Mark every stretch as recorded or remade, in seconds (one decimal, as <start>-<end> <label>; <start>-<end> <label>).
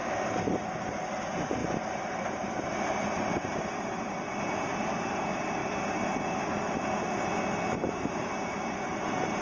0.0-0.8 recorded; 0.8-5.6 remade; 5.6-7.9 recorded; 7.9-9.4 remade